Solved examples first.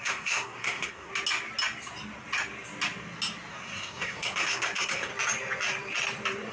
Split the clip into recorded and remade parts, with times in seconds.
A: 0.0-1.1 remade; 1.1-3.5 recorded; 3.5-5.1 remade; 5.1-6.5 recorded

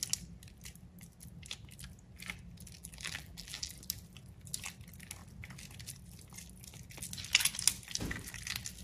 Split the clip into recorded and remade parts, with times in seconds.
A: 0.0-2.8 recorded; 2.8-3.7 remade; 3.7-8.8 recorded

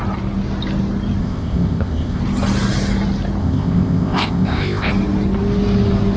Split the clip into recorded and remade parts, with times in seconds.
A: 0.0-1.2 recorded; 1.2-2.2 remade; 2.2-3.4 recorded; 3.4-4.9 remade; 4.9-6.2 recorded

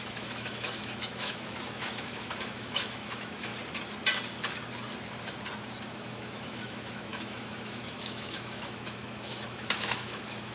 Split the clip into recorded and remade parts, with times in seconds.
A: 0.0-3.5 remade; 3.5-6.0 recorded; 6.0-10.5 remade

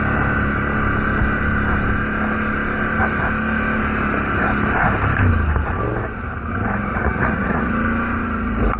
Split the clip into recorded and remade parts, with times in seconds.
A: 0.0-6.9 recorded; 6.9-7.7 remade; 7.7-8.8 recorded

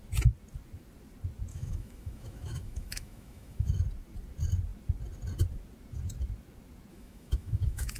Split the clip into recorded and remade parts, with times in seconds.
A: 0.0-1.5 recorded; 1.5-3.7 remade; 3.7-6.9 recorded; 6.9-8.0 remade

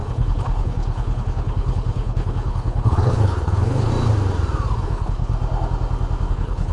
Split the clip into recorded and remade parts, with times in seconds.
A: 0.0-3.9 remade; 3.9-4.8 recorded; 4.8-5.3 remade; 5.3-6.3 recorded; 6.3-6.7 remade